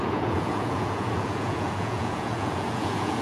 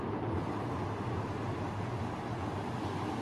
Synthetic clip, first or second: first